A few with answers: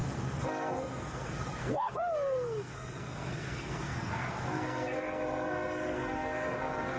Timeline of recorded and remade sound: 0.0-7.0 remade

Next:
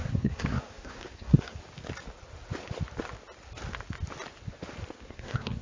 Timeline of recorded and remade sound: 0.0-1.6 remade; 1.6-5.0 recorded; 5.0-5.6 remade